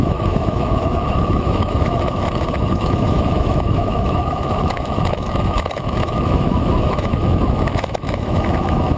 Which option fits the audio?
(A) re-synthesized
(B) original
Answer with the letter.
A